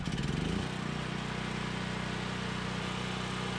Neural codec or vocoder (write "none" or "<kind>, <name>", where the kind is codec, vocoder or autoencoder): none